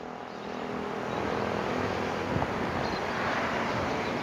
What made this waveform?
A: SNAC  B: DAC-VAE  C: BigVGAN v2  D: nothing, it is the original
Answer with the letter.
D